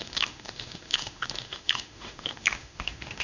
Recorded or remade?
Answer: remade